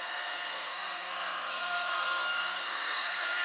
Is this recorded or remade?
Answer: remade